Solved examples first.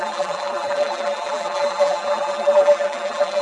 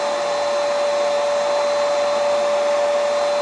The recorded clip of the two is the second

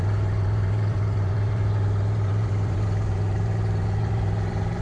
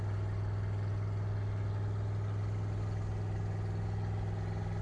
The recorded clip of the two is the second